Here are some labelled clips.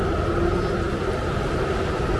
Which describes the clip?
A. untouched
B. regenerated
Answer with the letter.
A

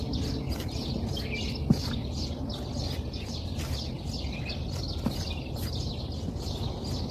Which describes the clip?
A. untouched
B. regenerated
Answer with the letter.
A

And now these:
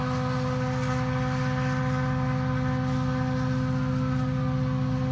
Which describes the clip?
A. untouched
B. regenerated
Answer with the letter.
A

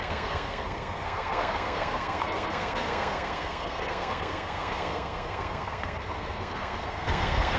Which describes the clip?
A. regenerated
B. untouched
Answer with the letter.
A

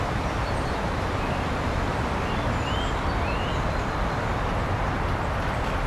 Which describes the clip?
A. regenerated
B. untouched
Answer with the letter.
B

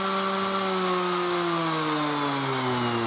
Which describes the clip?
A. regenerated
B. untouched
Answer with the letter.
B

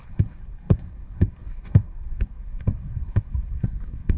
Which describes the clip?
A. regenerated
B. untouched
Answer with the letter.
A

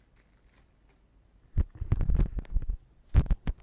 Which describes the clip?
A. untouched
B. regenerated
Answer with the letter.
A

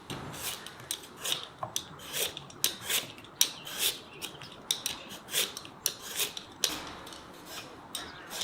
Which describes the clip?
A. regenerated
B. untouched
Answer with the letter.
B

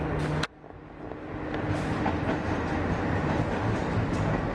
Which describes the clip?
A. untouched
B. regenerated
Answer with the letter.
A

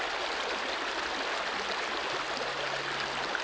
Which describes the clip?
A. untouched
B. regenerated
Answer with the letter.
A